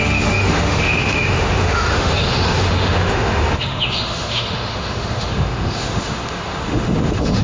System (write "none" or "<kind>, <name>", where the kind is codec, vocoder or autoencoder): autoencoder, DAC-VAE